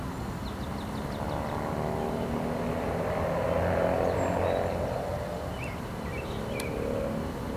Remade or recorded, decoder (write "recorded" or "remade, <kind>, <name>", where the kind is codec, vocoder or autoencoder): recorded